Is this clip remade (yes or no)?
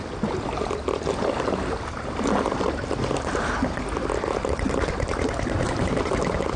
no